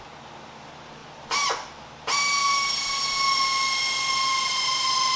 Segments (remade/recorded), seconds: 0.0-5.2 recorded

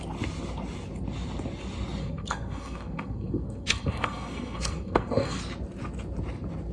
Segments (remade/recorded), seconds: 0.0-2.0 recorded; 2.0-5.4 remade; 5.4-6.7 recorded

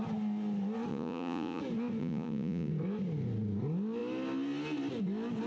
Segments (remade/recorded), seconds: 0.0-0.9 recorded; 0.9-1.6 remade; 1.6-2.0 recorded; 2.0-2.7 remade; 2.7-5.5 recorded

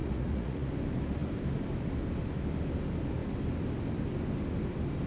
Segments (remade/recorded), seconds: 0.0-0.7 remade; 0.7-5.1 recorded

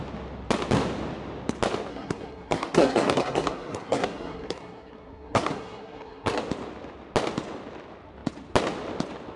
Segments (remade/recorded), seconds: 0.0-1.9 recorded; 1.9-6.4 remade; 6.4-9.4 recorded